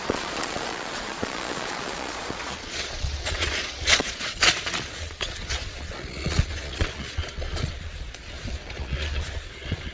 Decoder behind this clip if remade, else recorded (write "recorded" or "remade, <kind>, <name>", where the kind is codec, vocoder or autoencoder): remade, vocoder, Vocos